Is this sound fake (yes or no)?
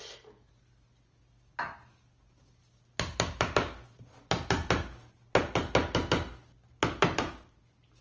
no